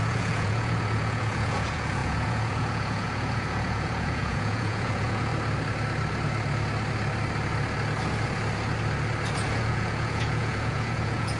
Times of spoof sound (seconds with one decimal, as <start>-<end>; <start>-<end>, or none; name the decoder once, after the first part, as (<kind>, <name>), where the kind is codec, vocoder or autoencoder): 0.0-5.3 (vocoder, Vocos); 9.5-11.4